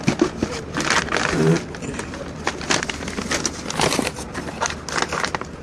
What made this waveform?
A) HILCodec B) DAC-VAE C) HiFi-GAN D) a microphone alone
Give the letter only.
D